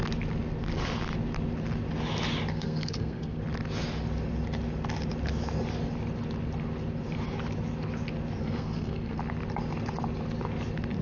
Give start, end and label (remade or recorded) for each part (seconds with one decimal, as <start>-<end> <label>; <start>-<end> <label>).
0.0-2.5 recorded; 2.5-3.4 remade; 3.4-8.4 recorded; 8.4-9.2 remade; 9.2-11.0 recorded